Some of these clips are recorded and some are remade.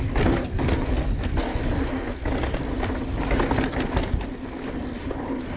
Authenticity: recorded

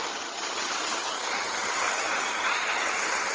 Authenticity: remade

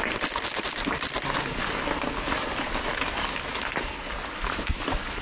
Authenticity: recorded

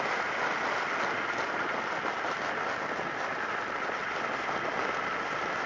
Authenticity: recorded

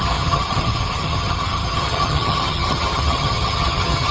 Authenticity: remade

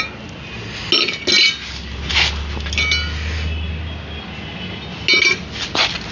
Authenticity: recorded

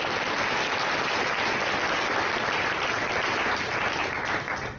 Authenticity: recorded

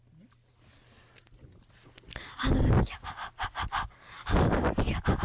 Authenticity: recorded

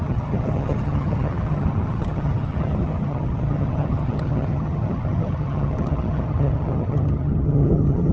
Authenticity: remade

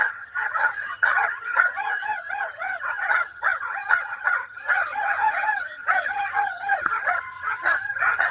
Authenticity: remade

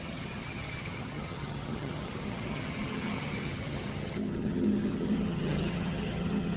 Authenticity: remade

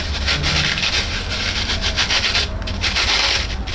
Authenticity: recorded